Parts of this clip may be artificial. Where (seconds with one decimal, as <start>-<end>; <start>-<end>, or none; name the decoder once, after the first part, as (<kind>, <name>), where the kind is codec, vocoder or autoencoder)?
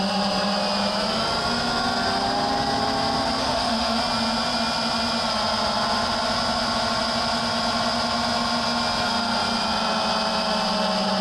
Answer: 3.4-4.0 (autoencoder, DAC-VAE)